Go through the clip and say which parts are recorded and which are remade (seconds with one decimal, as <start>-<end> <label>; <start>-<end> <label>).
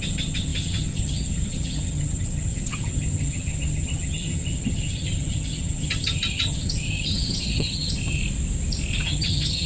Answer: 0.0-8.2 remade; 8.2-9.0 recorded; 9.0-9.7 remade